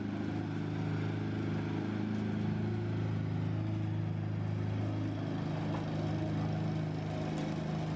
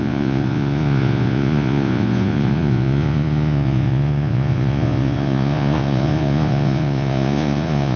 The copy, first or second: second